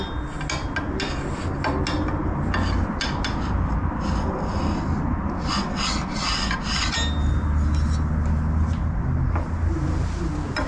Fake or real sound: real